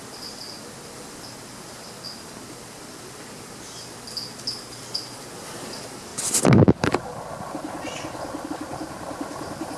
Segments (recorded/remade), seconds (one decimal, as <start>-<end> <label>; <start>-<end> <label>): 0.0-9.8 recorded